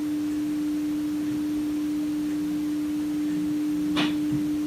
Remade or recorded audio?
recorded